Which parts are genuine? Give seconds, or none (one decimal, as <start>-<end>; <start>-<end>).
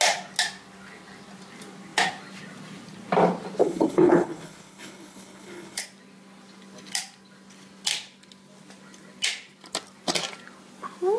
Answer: 0.0-3.6; 5.8-11.2